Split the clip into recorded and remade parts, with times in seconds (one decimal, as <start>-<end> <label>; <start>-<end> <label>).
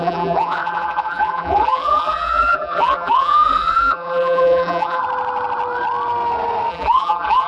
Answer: 0.0-5.0 remade; 5.0-6.7 recorded; 6.7-7.5 remade